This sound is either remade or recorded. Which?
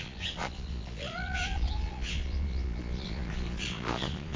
remade